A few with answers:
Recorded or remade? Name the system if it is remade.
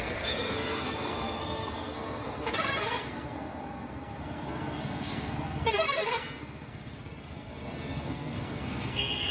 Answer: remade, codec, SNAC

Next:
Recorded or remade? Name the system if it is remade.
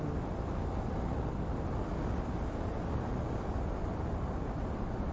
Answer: recorded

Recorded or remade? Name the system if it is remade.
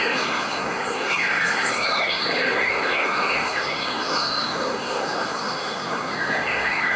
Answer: remade, codec, SNAC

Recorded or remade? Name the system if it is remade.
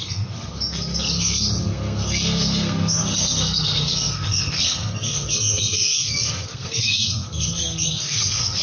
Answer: remade, codec, SNAC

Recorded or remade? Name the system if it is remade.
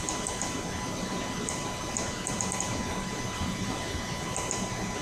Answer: recorded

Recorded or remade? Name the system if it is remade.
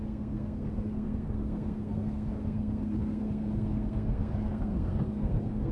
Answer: remade, codec, SNAC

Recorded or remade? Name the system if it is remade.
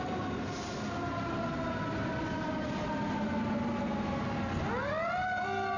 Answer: recorded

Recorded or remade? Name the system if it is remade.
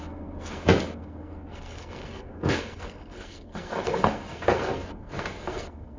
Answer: remade, codec, SNAC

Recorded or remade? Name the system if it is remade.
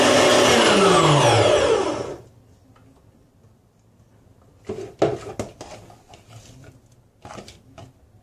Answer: recorded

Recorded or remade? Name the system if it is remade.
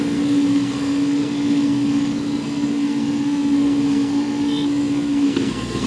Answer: remade, codec, SNAC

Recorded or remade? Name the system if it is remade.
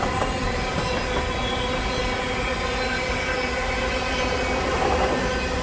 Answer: recorded